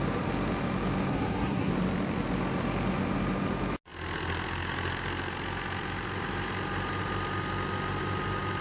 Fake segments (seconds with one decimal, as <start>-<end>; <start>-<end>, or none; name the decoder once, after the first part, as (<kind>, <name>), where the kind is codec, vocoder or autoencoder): 1.1-1.7 (codec, SNAC)